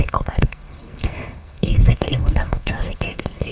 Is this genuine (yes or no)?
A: no